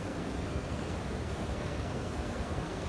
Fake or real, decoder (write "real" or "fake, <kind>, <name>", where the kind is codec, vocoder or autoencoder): fake, codec, SNAC